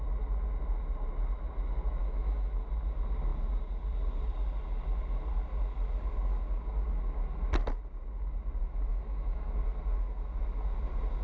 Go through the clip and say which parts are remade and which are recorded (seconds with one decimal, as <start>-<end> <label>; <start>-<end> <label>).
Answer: 0.0-2.0 recorded; 2.0-2.5 remade; 2.5-8.9 recorded; 8.9-9.5 remade; 9.5-11.2 recorded